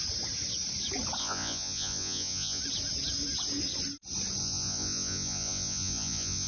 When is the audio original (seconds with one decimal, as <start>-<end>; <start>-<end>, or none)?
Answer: 0.0-1.2; 2.6-4.4